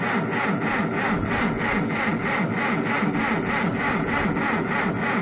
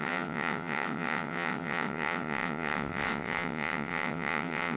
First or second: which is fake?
second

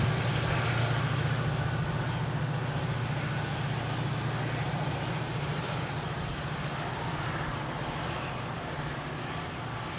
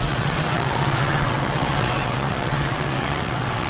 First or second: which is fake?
second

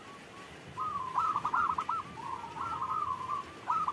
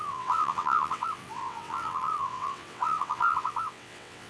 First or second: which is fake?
second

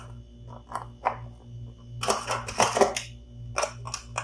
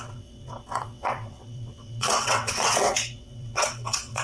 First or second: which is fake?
second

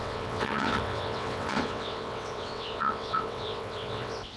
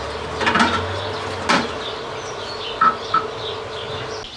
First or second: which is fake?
first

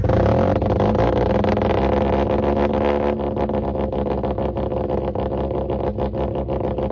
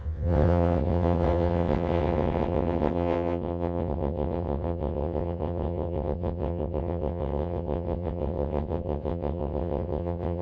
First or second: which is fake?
second